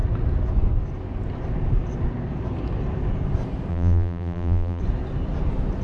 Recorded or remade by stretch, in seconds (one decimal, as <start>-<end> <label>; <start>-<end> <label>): 0.0-3.7 recorded; 3.7-4.8 remade; 4.8-5.8 recorded